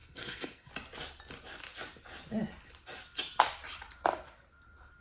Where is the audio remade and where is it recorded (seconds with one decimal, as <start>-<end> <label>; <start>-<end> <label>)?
0.0-0.7 remade; 0.7-5.0 recorded